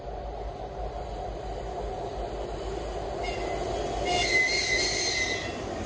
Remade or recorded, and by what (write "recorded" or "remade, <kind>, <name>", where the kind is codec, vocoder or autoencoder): recorded